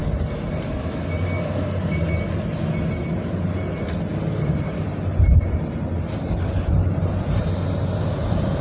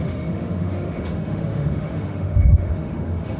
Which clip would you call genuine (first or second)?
first